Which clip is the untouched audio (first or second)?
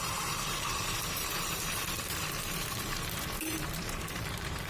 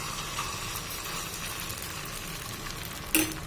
second